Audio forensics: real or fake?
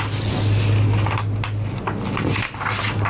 real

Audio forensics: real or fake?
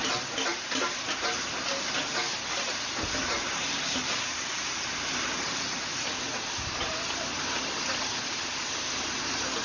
real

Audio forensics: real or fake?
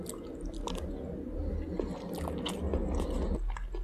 real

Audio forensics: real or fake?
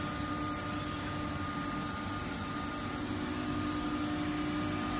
real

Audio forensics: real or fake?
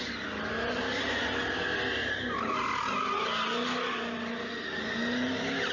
real